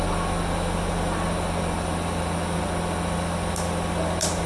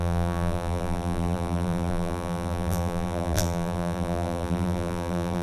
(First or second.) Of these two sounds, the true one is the first